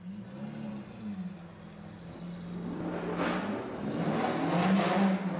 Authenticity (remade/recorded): recorded